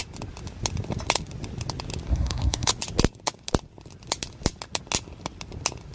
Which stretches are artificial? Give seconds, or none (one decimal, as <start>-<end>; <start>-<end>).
2.1-2.7